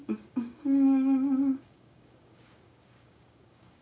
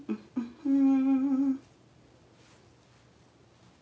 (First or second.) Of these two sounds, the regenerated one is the first